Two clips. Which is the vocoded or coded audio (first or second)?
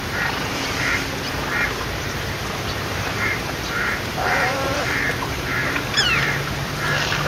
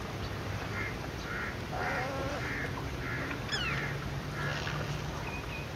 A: first